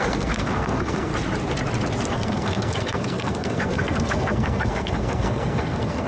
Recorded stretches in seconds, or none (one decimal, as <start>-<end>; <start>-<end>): 1.1-2.1